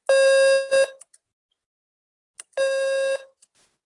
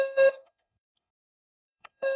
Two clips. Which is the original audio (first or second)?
first